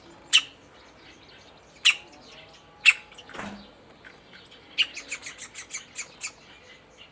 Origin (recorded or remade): recorded